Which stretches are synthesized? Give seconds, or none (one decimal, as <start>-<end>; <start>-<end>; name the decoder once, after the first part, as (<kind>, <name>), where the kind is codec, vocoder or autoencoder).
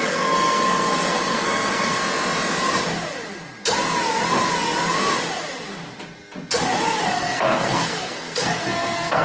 0.0-2.0 (codec, SNAC); 7.2-9.2